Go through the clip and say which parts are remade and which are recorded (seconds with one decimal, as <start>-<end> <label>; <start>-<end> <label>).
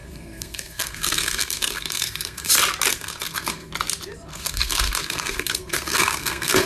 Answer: 0.0-2.5 remade; 2.5-2.9 recorded; 2.9-3.7 remade; 3.7-4.3 recorded; 4.3-6.7 remade